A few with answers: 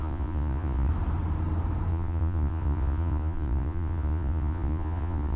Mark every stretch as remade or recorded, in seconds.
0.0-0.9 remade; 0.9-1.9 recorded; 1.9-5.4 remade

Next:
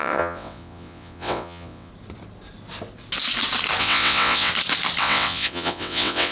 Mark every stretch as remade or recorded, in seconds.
0.0-1.9 remade; 1.9-3.8 recorded; 3.8-4.5 remade; 4.5-5.0 recorded; 5.0-6.3 remade

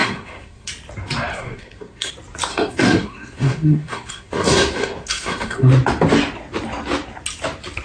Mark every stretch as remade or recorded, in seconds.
0.0-0.7 remade; 0.7-1.3 recorded; 1.3-2.1 remade; 2.1-2.5 recorded; 2.5-5.7 remade; 5.7-7.8 recorded

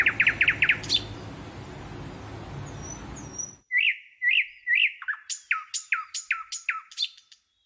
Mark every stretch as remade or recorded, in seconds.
0.0-7.7 recorded